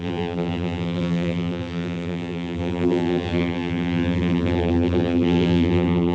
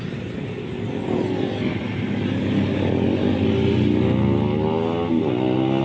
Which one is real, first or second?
second